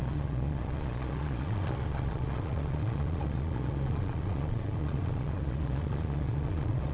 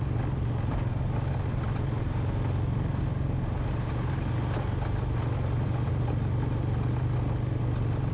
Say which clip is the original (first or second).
second